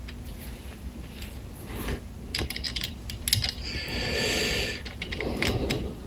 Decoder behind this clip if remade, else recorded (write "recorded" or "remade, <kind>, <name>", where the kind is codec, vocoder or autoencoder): recorded